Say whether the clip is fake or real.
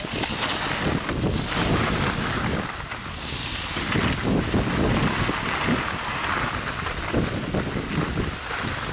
real